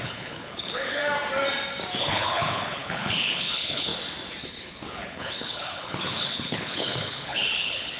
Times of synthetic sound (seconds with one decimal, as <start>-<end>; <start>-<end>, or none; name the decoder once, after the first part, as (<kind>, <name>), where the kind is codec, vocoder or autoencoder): 0.0-1.0 (codec, HILCodec); 2.0-3.9; 4.4-8.0

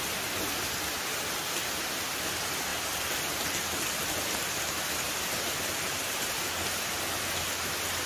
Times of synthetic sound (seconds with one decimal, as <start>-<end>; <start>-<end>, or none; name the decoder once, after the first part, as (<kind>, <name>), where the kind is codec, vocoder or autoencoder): none

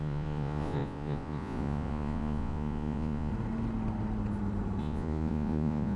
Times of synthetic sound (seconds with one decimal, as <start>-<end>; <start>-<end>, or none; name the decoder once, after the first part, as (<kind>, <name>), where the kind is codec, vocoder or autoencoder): 0.0-3.3 (vocoder, Vocos); 4.8-6.0